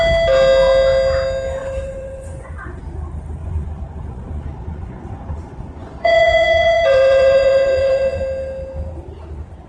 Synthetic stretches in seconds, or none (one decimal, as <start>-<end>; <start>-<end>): 1.6-2.8; 3.4-8.2